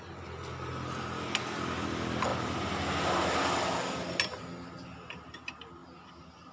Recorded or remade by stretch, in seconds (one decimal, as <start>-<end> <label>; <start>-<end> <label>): 0.0-6.5 recorded